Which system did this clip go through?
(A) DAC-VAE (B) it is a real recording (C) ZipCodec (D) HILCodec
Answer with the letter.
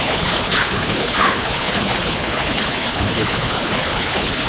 D